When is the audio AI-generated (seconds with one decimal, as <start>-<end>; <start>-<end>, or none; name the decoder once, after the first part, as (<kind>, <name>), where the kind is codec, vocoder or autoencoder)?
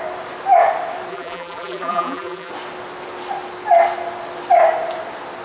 1.1-2.5 (vocoder, BigVGAN v2)